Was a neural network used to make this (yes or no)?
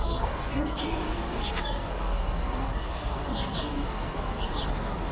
yes